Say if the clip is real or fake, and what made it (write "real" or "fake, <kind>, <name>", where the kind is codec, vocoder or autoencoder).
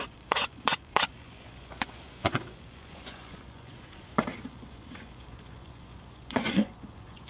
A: fake, vocoder, Vocos